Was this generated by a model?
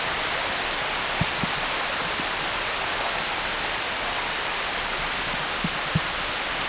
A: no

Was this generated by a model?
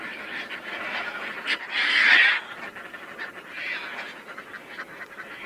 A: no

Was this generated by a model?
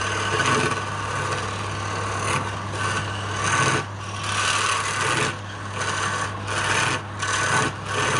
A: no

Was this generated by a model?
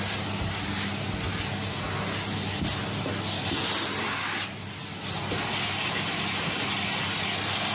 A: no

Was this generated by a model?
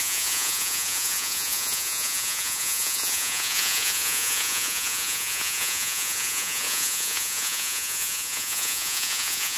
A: yes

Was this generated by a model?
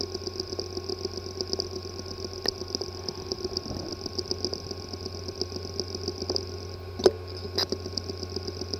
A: no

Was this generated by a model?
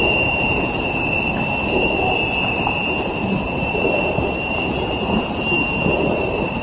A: yes